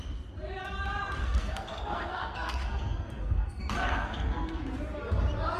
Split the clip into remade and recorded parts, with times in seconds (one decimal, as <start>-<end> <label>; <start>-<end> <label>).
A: 0.0-1.2 recorded; 1.2-4.6 remade; 4.6-5.6 recorded